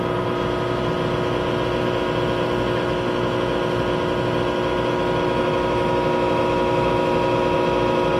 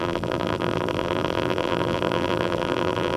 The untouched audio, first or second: first